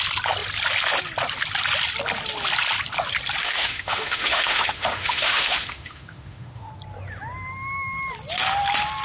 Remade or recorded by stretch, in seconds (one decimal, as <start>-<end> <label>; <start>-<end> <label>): 0.0-3.4 recorded; 3.4-6.7 remade; 6.7-9.0 recorded